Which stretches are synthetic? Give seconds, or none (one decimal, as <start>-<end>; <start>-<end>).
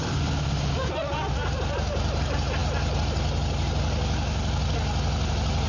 none